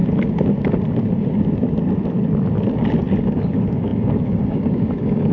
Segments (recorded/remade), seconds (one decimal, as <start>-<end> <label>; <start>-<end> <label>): 0.0-3.2 recorded; 3.2-5.3 remade